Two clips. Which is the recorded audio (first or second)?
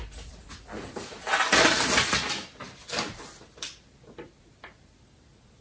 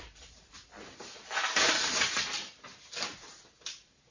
first